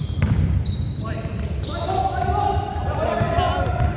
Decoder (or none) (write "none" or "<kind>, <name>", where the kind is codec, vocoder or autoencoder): none